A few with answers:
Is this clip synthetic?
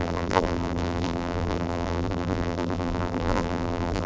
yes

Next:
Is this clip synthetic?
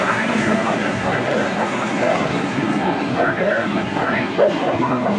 yes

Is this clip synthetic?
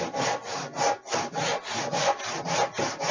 no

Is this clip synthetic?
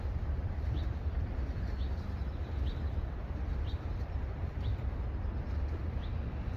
no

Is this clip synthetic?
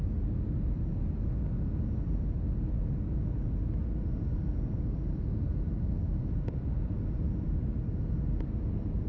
no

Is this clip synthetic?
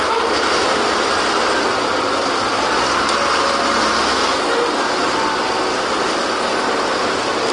no